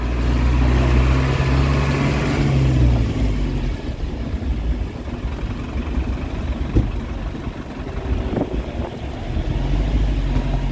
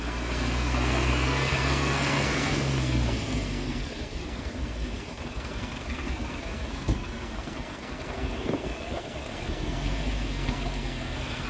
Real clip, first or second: first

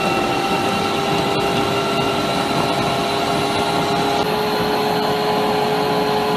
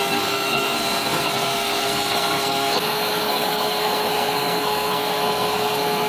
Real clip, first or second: first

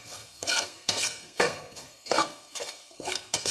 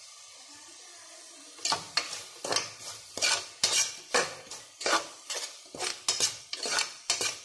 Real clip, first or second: second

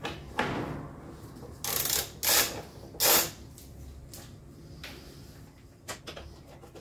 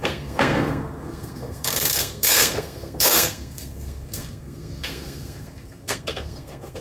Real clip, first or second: first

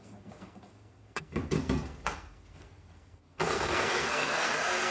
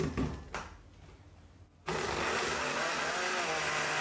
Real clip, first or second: second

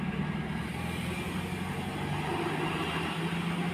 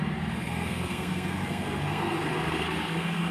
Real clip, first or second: first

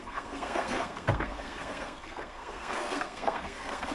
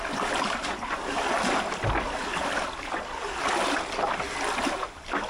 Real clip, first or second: second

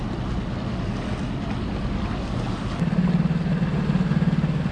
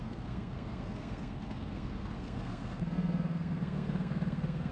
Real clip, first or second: first